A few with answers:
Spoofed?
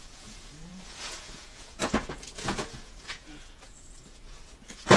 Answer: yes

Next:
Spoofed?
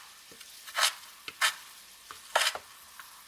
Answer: no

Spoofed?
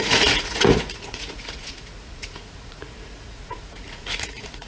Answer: yes